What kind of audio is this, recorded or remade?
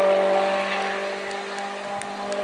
recorded